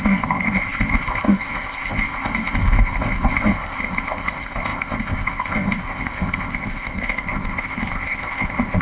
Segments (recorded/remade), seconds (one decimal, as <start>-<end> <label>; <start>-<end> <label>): 0.0-8.8 remade